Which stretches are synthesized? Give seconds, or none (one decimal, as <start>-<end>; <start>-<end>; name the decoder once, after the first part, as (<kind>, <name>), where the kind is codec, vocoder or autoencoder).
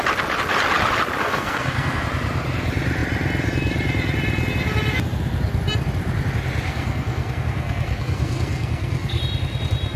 1.2-2.0 (codec, SNAC); 6.7-9.2